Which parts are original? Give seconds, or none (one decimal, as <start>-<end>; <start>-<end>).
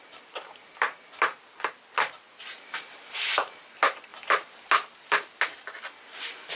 0.0-6.5